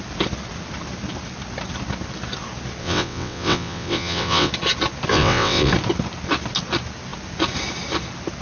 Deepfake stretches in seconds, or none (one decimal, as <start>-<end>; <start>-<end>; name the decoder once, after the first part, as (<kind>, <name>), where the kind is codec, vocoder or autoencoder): 2.8-4.5 (vocoder, WaveNeXt); 5.1-5.7